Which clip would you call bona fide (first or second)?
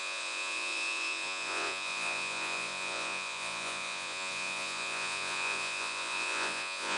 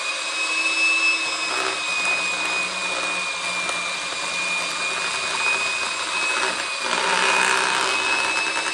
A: second